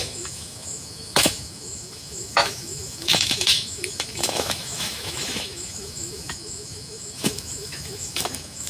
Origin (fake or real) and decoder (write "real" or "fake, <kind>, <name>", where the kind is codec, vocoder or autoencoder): fake, autoencoder, DAC-VAE